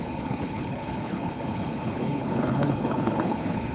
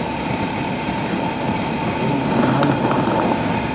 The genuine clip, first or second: second